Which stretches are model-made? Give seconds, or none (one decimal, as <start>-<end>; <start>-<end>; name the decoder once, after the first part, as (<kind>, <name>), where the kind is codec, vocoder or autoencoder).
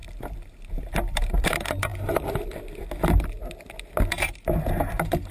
0.7-1.9 (vocoder, BigVGAN v2); 4.1-5.3